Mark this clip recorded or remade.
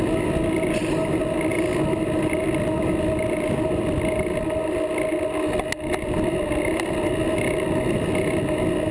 recorded